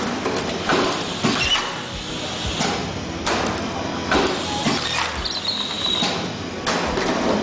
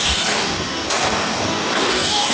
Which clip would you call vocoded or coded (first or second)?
second